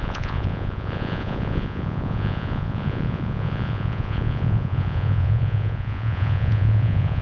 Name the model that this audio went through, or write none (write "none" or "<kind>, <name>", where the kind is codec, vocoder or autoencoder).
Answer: vocoder, Vocos